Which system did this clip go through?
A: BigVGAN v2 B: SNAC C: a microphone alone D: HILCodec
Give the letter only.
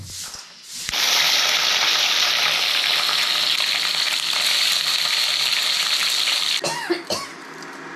C